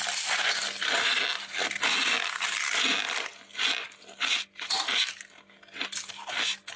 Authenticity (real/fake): real